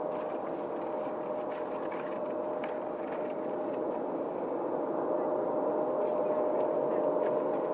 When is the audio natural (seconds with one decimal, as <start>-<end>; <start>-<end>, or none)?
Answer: 0.0-7.7